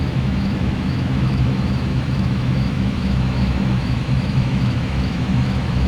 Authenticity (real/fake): fake